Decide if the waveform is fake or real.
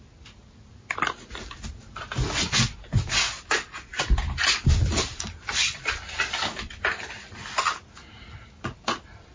real